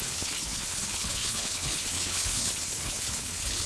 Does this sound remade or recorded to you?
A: remade